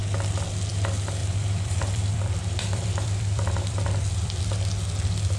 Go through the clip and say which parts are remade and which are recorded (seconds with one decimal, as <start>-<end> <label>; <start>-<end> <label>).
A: 0.0-1.2 recorded; 1.2-4.4 remade; 4.4-5.4 recorded